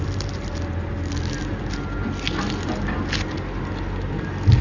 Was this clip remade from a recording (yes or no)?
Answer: no